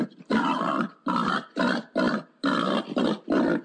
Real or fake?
real